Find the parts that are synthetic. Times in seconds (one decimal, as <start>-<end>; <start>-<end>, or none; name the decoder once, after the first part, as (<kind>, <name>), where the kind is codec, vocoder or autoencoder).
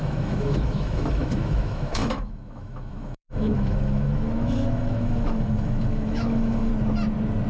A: 0.0-6.7 (autoencoder, DAC-VAE)